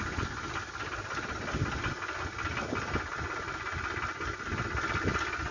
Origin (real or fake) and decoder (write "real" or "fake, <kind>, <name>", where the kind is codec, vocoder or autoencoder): real